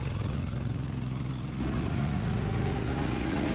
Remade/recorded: remade